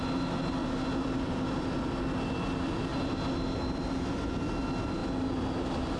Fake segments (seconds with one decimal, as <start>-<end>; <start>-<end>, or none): none